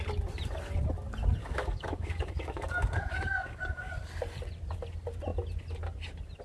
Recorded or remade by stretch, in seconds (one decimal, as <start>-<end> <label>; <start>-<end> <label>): 0.0-1.4 recorded; 1.4-3.9 remade; 3.9-6.4 recorded